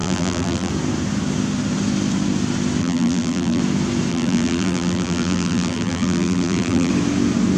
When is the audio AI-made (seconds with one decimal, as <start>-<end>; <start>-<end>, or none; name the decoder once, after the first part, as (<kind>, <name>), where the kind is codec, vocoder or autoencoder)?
0.0-0.7 (vocoder, BigVGAN v2); 2.8-3.6; 4.1-6.9